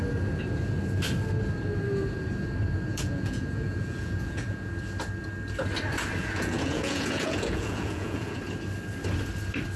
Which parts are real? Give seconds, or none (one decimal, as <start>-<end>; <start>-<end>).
0.0-2.9; 4.7-6.2; 8.4-9.8